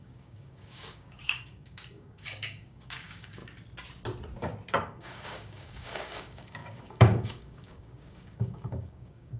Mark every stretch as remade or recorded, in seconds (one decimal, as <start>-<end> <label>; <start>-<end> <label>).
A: 0.0-3.4 remade; 3.4-4.7 recorded; 4.7-9.4 remade